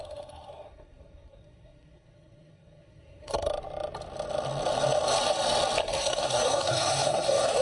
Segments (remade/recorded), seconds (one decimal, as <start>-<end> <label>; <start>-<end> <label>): 0.0-3.5 remade; 3.5-5.8 recorded; 5.8-7.6 remade